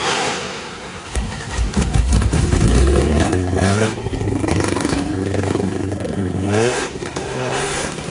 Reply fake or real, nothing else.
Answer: fake